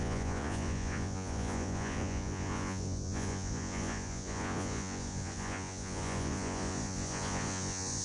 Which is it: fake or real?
fake